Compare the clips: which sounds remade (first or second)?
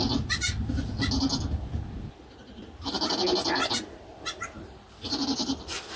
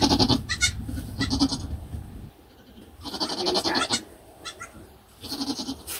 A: second